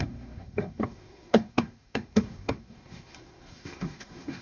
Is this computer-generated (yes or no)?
yes